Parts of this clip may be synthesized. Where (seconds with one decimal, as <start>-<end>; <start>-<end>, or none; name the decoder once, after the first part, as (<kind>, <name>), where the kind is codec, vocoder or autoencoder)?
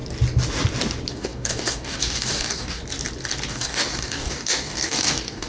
1.1-2.8 (codec, DAC); 3.5-5.5